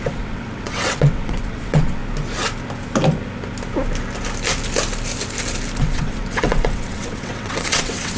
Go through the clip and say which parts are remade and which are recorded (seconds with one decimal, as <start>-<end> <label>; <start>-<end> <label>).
0.0-2.0 remade; 2.0-5.8 recorded; 5.8-8.2 remade